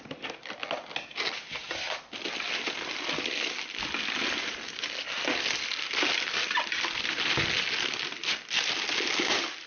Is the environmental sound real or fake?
real